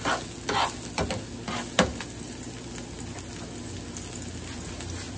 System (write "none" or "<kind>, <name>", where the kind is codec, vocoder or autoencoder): none